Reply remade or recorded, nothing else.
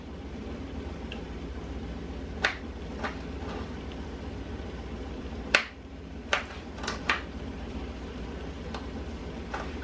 remade